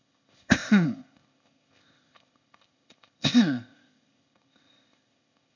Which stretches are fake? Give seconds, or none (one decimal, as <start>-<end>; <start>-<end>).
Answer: 0.0-5.6